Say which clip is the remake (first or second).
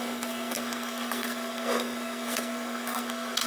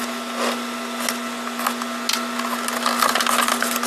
first